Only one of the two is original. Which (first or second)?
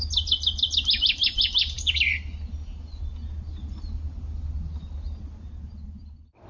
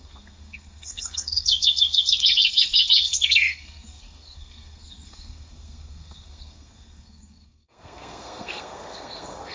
first